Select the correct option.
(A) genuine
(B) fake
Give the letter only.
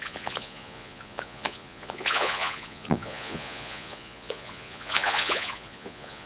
B